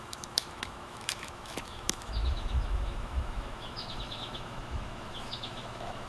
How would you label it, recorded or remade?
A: remade